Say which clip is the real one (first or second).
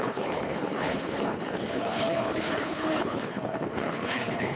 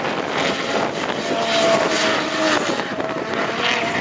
second